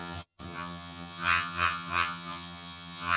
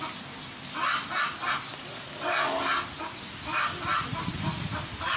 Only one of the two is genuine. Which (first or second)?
second